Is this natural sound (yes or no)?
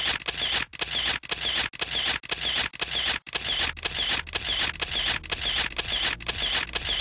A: yes